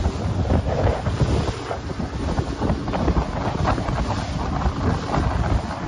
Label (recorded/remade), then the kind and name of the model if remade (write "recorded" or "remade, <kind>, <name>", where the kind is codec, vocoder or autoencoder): recorded